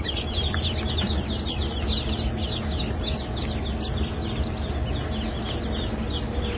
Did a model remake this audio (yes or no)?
no